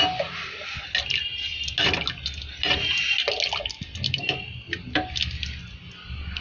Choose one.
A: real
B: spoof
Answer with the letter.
A